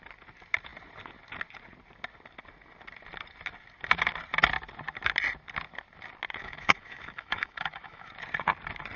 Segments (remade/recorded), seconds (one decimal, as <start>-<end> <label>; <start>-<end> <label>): 0.0-6.4 recorded; 6.4-8.1 remade; 8.1-9.0 recorded